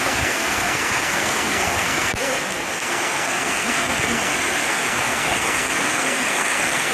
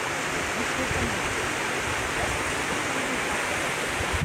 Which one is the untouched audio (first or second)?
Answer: second